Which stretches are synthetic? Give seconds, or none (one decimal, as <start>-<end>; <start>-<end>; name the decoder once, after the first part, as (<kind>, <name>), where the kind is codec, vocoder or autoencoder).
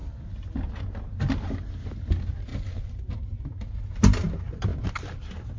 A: 0.0-0.8 (vocoder, BigVGAN v2)